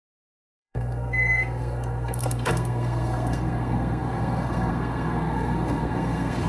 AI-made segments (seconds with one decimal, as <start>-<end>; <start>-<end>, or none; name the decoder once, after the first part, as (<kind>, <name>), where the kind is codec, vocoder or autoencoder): 0.0-6.5 (codec, SNAC)